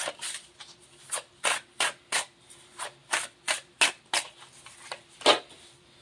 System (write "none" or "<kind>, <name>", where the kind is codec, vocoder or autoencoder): none